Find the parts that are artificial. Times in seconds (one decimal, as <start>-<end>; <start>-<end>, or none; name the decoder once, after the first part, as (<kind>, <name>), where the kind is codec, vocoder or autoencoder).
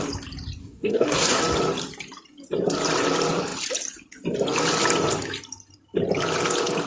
0.6-1.4 (codec, SNAC)